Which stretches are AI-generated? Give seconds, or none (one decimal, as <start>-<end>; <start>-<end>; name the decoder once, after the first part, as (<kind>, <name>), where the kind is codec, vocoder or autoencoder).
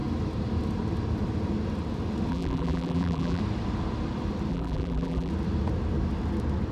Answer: 2.3-3.4 (vocoder, BigVGAN v2); 4.5-5.3